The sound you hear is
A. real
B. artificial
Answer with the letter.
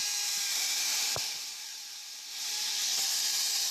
A